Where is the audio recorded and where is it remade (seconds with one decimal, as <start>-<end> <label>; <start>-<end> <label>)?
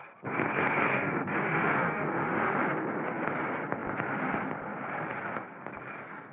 0.0-0.9 recorded; 0.9-2.5 remade; 2.5-6.3 recorded